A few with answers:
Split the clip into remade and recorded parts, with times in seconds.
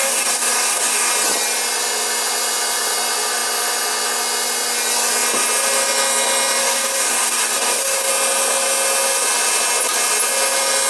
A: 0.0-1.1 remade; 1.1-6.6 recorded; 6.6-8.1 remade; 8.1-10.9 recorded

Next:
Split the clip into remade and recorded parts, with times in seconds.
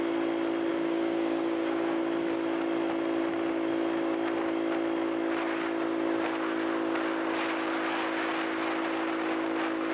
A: 0.0-0.7 recorded; 0.7-2.0 remade; 2.0-9.9 recorded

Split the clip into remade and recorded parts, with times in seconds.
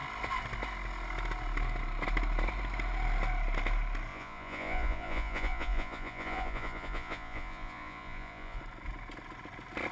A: 0.0-4.1 recorded; 4.1-8.6 remade; 8.6-9.9 recorded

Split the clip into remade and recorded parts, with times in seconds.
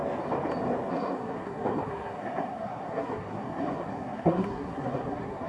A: 0.0-0.9 recorded; 0.9-5.5 remade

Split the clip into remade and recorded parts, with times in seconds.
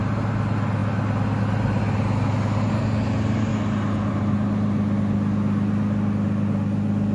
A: 0.0-7.1 recorded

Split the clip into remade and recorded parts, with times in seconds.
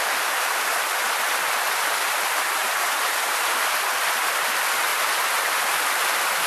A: 0.0-6.5 recorded